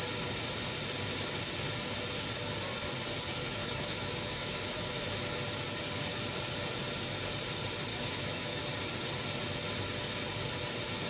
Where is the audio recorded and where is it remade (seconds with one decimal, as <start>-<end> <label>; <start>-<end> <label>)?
0.0-3.4 recorded; 3.4-5.0 remade; 5.0-7.9 recorded; 7.9-8.6 remade; 8.6-11.1 recorded